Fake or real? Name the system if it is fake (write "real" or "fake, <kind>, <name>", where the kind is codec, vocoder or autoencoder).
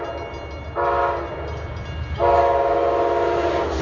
real